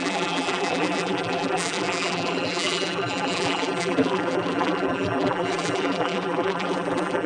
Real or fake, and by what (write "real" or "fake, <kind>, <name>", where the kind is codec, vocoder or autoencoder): fake, vocoder, BigVGAN v2